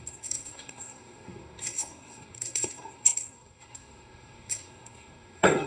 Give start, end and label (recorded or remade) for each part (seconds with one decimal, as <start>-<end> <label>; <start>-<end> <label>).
0.0-5.7 remade